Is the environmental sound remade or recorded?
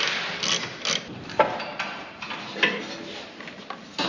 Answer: recorded